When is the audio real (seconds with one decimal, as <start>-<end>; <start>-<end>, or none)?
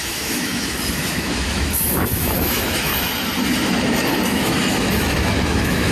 2.9-4.3